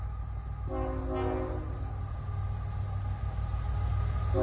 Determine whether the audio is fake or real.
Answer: real